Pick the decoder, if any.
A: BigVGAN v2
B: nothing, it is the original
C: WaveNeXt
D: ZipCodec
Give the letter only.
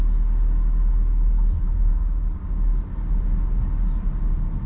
B